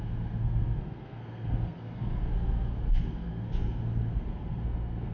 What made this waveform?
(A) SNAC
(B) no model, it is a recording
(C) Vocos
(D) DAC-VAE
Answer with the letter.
A